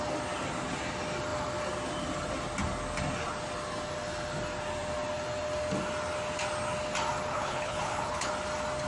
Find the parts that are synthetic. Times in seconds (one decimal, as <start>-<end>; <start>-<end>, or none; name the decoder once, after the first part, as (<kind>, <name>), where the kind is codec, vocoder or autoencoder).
7.3-8.3 (codec, HILCodec)